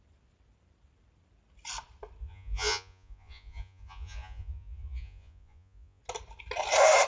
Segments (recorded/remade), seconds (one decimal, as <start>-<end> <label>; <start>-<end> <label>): 0.0-2.2 recorded; 2.2-6.0 remade; 6.0-7.1 recorded